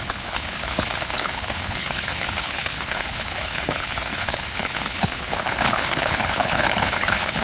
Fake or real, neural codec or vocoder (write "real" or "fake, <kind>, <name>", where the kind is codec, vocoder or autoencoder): fake, codec, HILCodec